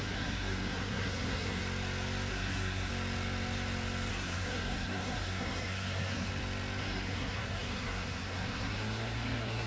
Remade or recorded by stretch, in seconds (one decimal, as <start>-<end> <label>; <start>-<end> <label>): 0.0-1.6 remade; 1.6-2.3 recorded; 2.3-2.9 remade; 2.9-4.1 recorded; 4.1-6.3 remade; 6.3-6.8 recorded; 6.8-9.7 remade